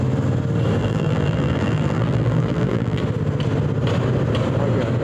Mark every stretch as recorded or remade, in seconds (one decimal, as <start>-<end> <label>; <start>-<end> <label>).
0.0-0.8 recorded; 0.8-3.0 remade; 3.0-5.0 recorded